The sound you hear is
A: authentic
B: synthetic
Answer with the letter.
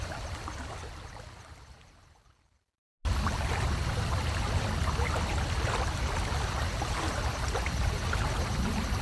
A